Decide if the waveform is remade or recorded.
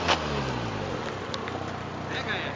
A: recorded